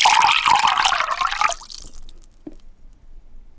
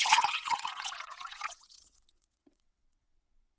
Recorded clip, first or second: first